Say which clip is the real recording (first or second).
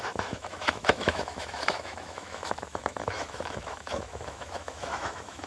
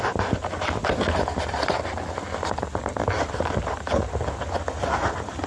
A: second